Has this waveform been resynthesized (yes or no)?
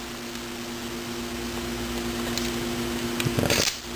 no